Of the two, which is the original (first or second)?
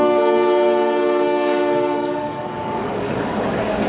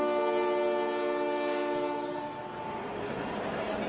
second